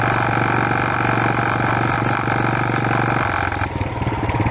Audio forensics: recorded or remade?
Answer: recorded